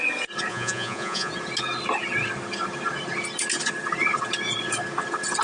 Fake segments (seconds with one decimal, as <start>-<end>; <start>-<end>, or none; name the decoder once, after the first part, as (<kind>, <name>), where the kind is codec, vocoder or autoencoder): 0.5-1.3 (vocoder, Vocos)